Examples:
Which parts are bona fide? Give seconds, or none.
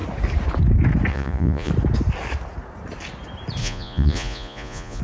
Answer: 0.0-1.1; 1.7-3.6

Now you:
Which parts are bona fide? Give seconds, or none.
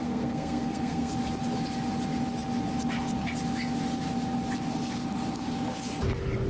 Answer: 1.1-6.5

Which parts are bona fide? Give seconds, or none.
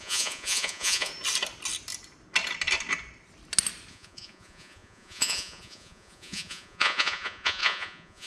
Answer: 1.1-3.9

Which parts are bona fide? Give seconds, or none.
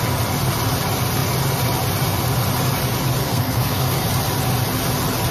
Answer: 0.0-3.2; 4.0-5.3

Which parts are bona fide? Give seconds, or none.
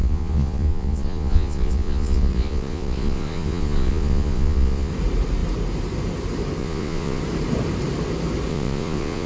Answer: 4.9-6.6; 7.2-8.5